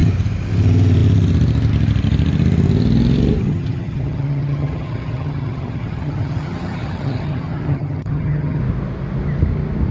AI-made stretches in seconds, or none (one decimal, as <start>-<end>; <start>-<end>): 3.4-8.6